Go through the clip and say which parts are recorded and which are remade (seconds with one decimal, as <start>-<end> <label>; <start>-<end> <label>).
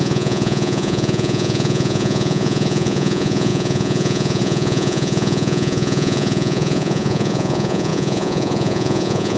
0.0-9.4 remade